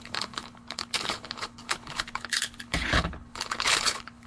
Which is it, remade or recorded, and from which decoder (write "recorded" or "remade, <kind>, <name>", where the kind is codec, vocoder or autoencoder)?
remade, codec, HILCodec